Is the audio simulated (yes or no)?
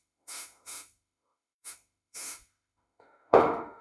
yes